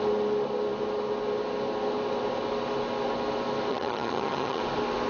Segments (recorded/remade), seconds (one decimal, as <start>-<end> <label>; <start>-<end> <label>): 0.0-3.7 recorded; 3.7-4.6 remade; 4.6-5.1 recorded